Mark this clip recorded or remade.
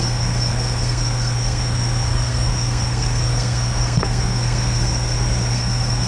remade